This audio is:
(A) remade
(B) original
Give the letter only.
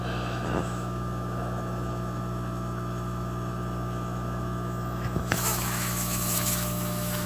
A